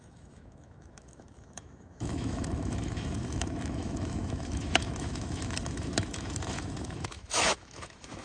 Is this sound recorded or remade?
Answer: remade